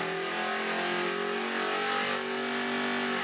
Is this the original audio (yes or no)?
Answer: yes